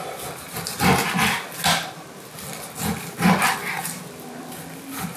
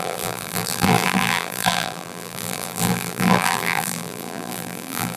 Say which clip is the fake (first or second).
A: second